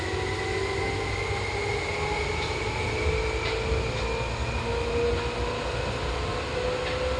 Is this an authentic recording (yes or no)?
yes